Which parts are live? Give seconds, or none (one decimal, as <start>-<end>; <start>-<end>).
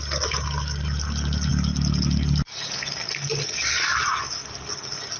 0.0-5.2